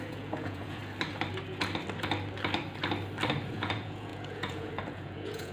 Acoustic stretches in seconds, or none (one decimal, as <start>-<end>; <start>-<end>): 0.8-3.5